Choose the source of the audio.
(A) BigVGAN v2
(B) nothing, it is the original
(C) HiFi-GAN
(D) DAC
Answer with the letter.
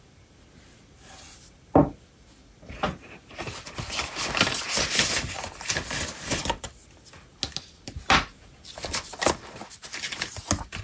B